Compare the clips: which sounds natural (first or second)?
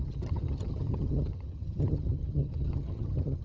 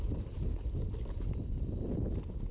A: second